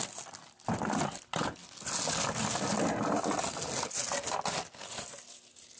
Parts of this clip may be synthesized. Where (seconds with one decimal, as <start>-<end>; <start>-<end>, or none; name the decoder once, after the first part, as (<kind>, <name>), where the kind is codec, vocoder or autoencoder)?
none